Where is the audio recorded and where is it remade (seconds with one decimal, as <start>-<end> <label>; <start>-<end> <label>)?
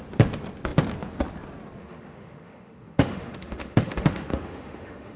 0.0-1.8 recorded; 1.8-5.2 remade